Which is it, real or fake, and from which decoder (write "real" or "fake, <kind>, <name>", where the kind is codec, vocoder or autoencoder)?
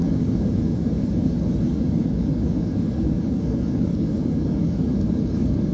fake, codec, DAC